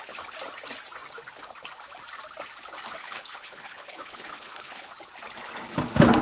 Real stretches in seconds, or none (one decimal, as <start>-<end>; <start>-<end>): 0.0-3.0; 4.9-6.2